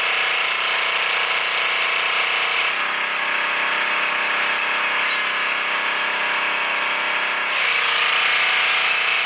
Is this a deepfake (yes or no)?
no